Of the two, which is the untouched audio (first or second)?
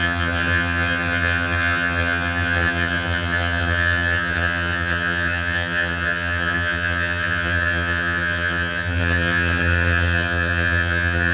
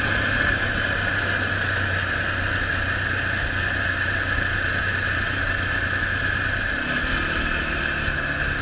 second